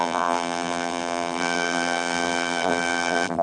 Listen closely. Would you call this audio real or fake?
fake